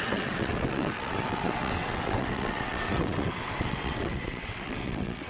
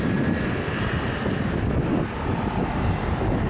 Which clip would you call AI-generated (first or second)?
first